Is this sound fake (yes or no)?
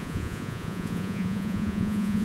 yes